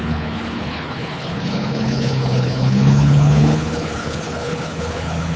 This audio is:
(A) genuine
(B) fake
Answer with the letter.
B